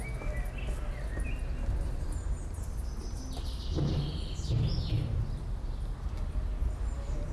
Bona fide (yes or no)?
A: yes